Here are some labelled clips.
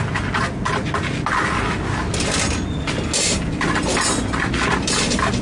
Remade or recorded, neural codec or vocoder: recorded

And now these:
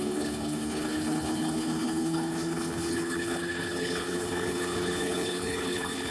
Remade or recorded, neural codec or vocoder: remade, codec, HILCodec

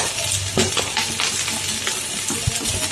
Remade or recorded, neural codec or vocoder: recorded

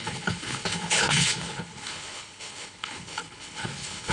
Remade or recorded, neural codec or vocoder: remade, codec, HILCodec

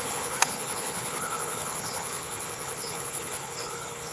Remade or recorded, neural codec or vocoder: remade, codec, HILCodec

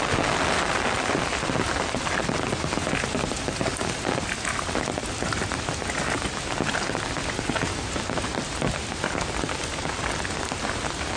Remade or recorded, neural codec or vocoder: recorded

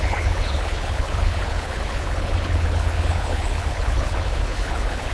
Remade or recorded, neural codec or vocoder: remade, codec, HILCodec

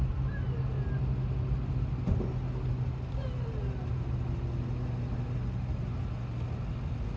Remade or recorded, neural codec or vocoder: recorded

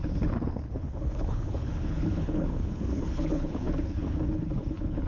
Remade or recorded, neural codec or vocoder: remade, codec, HILCodec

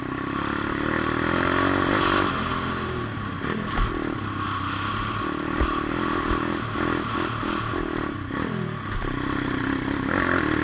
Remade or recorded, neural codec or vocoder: recorded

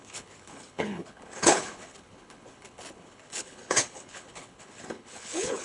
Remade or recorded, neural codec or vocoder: remade, codec, HILCodec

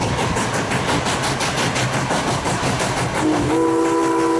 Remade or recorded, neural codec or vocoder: recorded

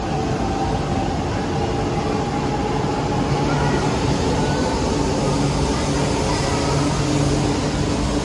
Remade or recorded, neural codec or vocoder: recorded